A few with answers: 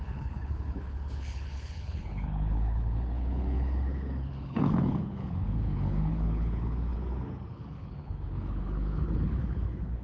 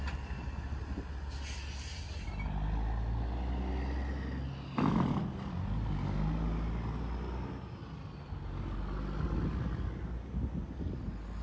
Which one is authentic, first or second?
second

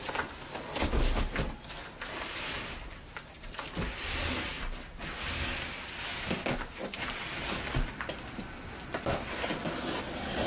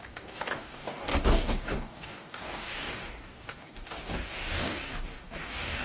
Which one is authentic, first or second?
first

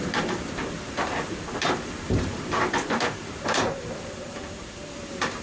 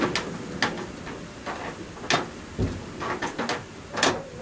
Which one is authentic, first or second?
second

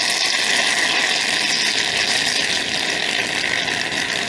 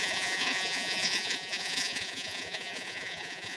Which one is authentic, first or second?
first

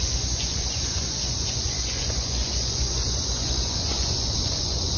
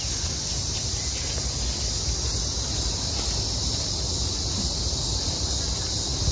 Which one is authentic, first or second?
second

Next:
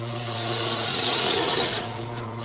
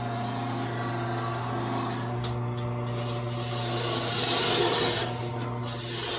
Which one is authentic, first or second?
second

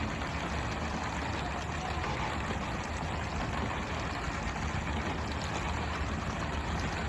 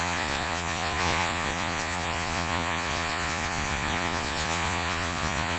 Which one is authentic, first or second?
first